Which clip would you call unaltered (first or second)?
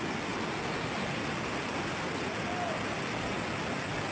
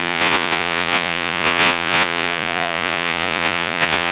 first